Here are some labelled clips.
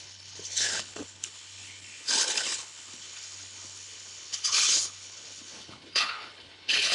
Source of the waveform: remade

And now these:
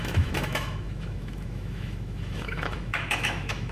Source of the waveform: remade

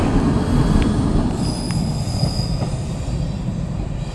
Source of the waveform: recorded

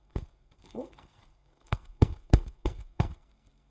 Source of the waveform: remade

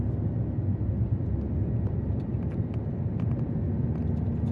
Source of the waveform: recorded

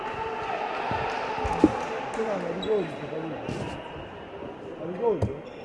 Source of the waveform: recorded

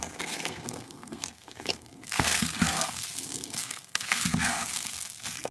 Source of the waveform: remade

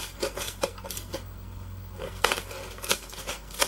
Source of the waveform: remade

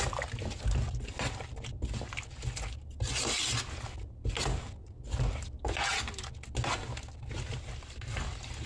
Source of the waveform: recorded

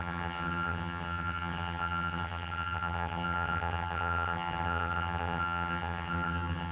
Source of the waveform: remade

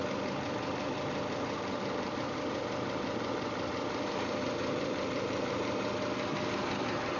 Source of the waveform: recorded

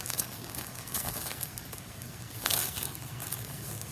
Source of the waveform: remade